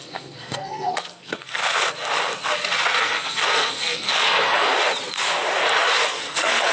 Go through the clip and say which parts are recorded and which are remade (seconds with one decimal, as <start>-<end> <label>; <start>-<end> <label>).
0.0-1.6 remade; 1.6-3.0 recorded; 3.0-4.7 remade; 4.7-6.1 recorded; 6.1-6.7 remade